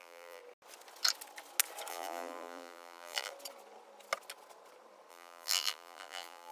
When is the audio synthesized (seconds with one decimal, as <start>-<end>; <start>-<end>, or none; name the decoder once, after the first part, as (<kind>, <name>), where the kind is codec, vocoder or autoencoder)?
0.0-0.4 (vocoder, BigVGAN v2); 1.9-3.3; 5.1-6.5